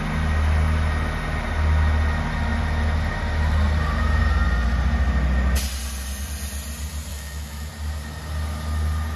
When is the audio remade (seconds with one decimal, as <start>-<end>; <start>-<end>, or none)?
7.1-7.7